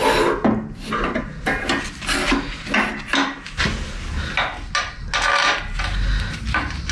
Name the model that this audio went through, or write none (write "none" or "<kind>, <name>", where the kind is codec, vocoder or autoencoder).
none